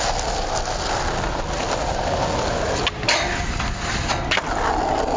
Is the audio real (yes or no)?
yes